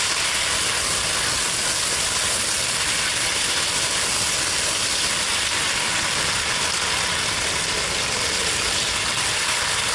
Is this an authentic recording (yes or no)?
yes